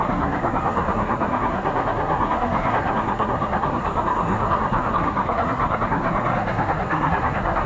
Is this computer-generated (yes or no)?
yes